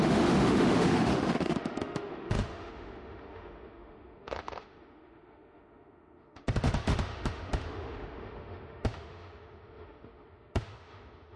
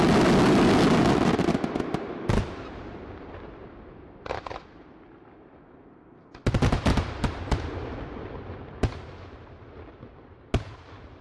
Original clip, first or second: second